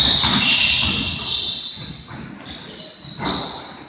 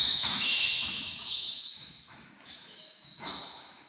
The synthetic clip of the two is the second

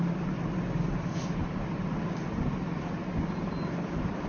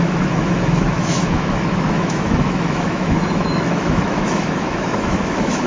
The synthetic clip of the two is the second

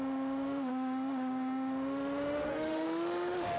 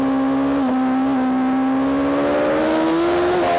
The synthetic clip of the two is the first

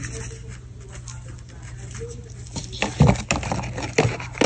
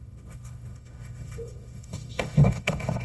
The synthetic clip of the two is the second